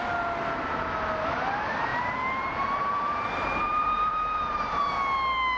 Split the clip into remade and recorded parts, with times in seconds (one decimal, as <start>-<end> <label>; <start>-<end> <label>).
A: 0.0-1.9 recorded; 1.9-4.9 remade; 4.9-5.6 recorded